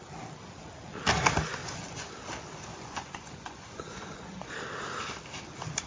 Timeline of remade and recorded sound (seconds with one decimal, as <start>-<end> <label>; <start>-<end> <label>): 0.0-1.6 recorded; 1.6-2.1 remade; 2.1-2.7 recorded; 2.7-4.5 remade; 4.5-5.9 recorded

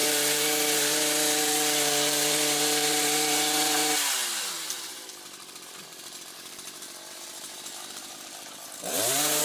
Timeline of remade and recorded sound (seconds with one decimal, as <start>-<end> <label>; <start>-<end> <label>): 0.0-9.4 remade

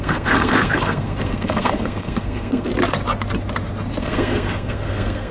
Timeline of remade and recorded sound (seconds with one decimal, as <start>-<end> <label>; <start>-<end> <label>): 0.0-2.7 remade; 2.7-4.0 recorded; 4.0-5.3 remade

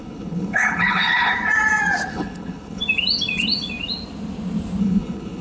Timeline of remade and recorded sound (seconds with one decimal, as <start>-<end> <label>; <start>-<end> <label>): 0.0-1.3 remade; 1.3-2.1 recorded; 2.1-2.8 remade; 2.8-4.8 recorded; 4.8-5.4 remade

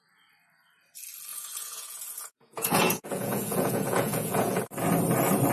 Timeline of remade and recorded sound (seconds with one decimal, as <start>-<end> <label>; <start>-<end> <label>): 0.0-1.3 recorded; 1.3-4.6 remade; 4.6-5.5 recorded

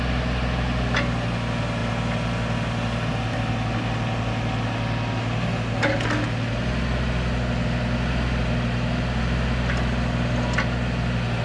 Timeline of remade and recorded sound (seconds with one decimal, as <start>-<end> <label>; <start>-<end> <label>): 0.0-11.4 recorded

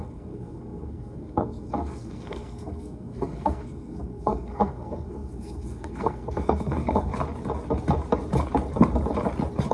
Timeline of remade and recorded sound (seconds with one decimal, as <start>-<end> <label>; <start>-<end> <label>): 0.0-7.1 remade; 7.1-9.7 recorded